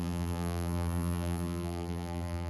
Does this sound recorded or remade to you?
remade